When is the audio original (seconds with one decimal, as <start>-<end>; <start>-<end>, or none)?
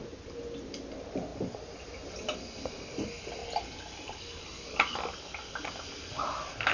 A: 0.0-6.7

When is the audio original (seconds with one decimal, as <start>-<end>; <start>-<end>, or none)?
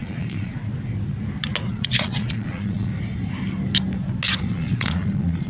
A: 0.6-1.7; 2.9-4.4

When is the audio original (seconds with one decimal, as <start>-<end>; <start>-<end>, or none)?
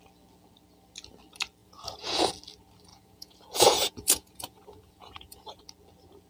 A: 0.0-1.6; 2.3-2.9; 5.6-6.3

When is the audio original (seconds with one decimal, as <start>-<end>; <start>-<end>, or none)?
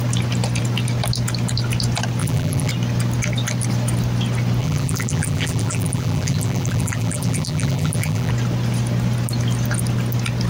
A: 0.0-2.2; 2.7-4.6; 8.3-10.5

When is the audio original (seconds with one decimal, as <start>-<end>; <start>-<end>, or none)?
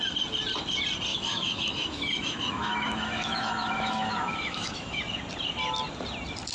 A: 0.0-1.1; 5.0-6.5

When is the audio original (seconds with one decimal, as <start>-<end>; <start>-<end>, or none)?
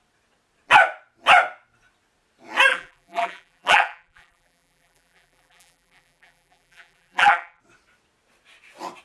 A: 0.0-2.7; 7.6-9.0